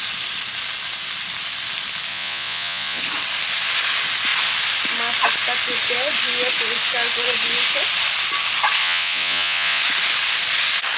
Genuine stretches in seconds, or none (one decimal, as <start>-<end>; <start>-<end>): 0.0-2.1; 3.0-8.8; 9.8-11.0